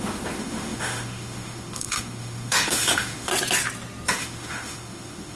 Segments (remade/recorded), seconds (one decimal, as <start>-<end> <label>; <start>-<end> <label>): 0.0-3.3 remade; 3.3-4.1 recorded; 4.1-5.4 remade